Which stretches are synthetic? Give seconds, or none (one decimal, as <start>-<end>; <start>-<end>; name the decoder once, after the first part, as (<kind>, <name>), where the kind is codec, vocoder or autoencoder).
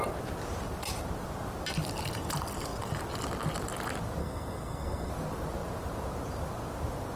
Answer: 4.2-5.1 (codec, SNAC)